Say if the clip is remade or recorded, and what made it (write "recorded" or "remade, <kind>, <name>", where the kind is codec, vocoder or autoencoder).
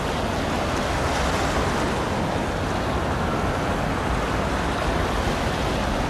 recorded